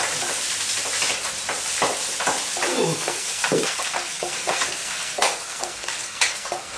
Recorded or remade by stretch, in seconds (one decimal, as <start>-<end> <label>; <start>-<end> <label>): 0.0-2.7 recorded; 2.7-6.8 remade